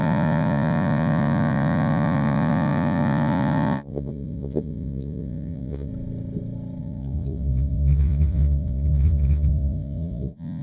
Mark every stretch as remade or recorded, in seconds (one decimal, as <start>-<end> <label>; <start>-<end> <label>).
0.0-5.9 remade; 5.9-6.8 recorded; 6.8-10.6 remade